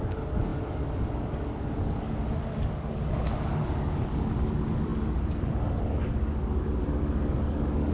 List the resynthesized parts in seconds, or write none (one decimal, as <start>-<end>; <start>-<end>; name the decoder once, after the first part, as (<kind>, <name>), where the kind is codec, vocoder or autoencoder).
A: 0.0-7.9 (codec, DAC)